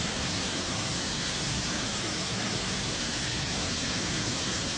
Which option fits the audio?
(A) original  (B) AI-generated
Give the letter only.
B